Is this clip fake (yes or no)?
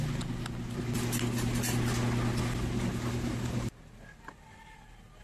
no